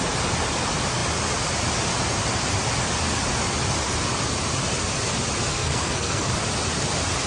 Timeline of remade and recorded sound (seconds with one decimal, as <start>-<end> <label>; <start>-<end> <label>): 0.0-5.5 recorded; 5.5-6.3 remade; 6.3-7.3 recorded